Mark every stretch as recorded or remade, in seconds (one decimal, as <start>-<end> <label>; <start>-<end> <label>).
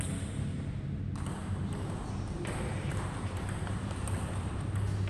0.0-1.4 recorded; 1.4-4.5 remade; 4.5-5.1 recorded